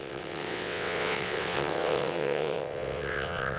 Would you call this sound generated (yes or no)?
yes